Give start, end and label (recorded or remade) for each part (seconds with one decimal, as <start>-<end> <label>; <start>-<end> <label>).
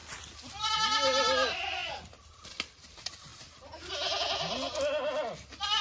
0.0-0.7 remade; 0.7-5.8 recorded